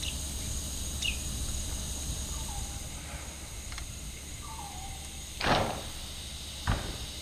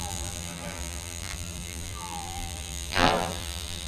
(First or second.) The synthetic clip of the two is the second